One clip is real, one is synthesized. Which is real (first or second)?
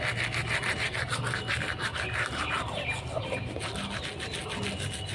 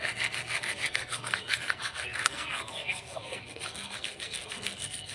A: first